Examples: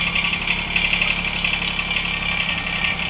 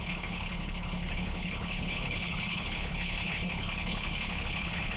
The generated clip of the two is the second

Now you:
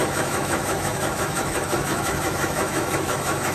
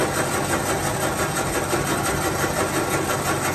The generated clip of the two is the first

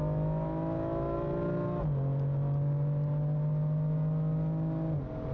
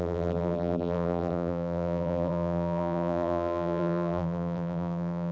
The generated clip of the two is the second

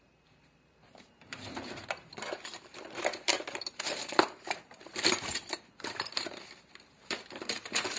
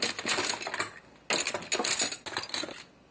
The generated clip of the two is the first